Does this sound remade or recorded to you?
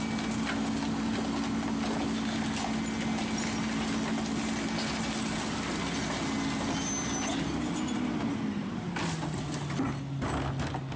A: recorded